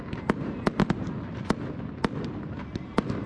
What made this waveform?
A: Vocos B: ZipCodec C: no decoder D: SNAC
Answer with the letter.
C